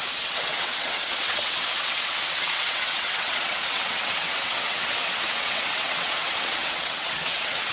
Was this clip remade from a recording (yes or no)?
yes